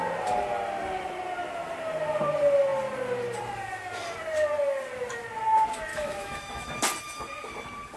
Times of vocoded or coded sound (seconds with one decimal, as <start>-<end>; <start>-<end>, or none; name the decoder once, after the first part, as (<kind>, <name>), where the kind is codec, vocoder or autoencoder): 5.9-6.7 (autoencoder, DAC-VAE)